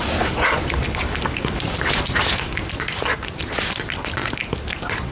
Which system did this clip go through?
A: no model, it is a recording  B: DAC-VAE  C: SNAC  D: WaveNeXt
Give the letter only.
A